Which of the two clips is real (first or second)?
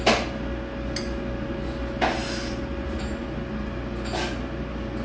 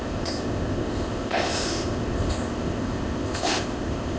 first